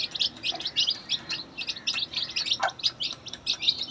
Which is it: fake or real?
real